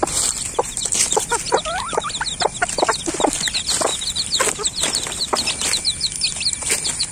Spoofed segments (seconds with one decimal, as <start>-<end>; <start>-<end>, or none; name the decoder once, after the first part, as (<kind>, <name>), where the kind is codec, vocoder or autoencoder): 0.0-1.3 (vocoder, BigVGAN v2); 2.6-7.1